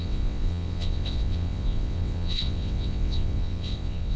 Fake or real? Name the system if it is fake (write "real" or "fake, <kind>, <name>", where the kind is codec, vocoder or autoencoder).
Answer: fake, vocoder, WaveNeXt